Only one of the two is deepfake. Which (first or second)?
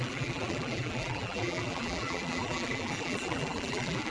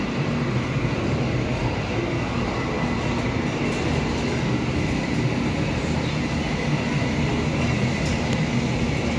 first